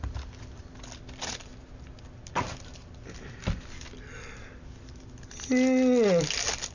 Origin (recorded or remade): recorded